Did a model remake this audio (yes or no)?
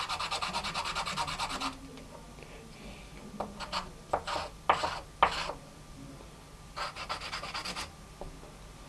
no